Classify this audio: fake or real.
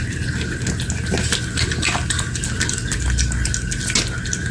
real